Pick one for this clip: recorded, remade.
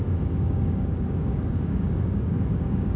remade